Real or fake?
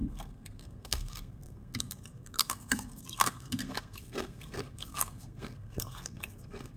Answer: fake